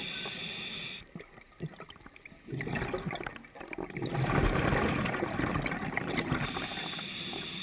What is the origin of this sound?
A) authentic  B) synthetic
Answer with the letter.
A